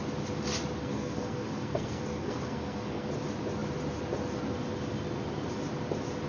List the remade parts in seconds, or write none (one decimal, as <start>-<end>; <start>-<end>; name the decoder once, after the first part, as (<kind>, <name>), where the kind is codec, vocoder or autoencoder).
0.8-3.1 (codec, SNAC)